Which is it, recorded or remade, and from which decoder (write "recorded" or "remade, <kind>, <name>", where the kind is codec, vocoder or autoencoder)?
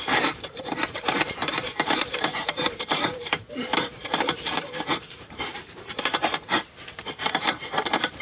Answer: remade, vocoder, BigVGAN v2